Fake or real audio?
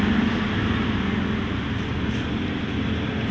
real